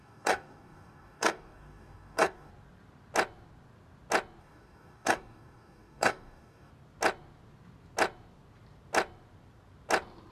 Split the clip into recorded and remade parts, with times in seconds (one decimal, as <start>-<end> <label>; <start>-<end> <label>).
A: 0.0-2.5 remade; 2.5-4.4 recorded; 4.4-6.7 remade; 6.7-10.3 recorded